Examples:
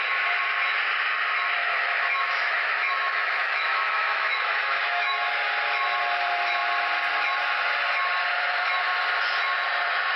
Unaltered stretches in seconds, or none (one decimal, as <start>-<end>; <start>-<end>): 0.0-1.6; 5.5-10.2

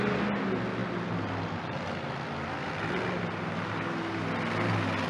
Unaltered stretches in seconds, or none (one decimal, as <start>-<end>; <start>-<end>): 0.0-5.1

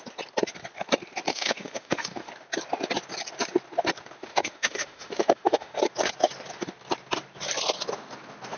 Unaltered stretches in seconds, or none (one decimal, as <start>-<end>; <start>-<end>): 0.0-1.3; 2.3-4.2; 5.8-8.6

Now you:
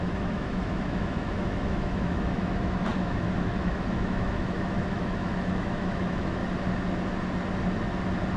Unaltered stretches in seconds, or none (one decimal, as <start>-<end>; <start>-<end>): 6.4-8.4

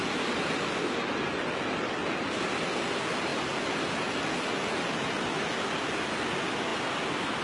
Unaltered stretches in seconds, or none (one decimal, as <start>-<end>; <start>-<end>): 0.0-7.4